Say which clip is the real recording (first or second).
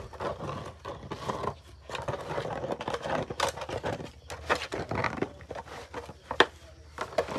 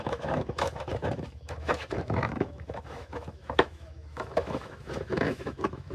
first